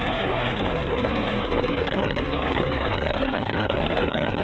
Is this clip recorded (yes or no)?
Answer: no